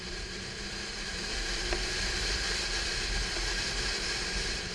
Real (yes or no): no